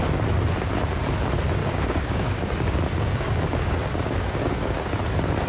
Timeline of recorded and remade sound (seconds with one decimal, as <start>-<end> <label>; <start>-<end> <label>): 0.0-1.6 recorded; 1.6-4.9 remade; 4.9-5.5 recorded